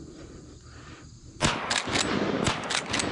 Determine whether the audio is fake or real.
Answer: real